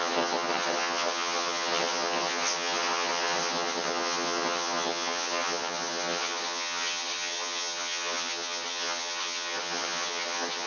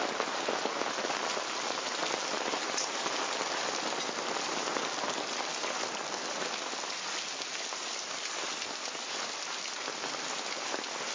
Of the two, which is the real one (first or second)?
second